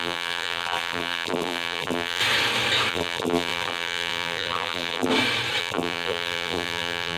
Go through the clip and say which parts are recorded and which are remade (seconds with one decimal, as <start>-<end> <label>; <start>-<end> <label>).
0.0-2.2 remade; 2.2-2.9 recorded; 2.9-5.1 remade; 5.1-5.6 recorded; 5.6-7.2 remade